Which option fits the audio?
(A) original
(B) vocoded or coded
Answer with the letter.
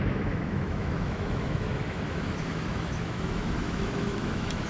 B